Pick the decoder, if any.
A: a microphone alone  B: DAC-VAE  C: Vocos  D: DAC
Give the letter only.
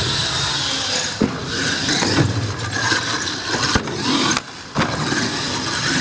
A